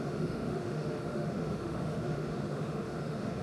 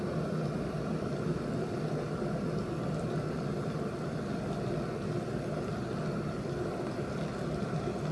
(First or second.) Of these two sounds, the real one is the second